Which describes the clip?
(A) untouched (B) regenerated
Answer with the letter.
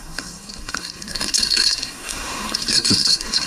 B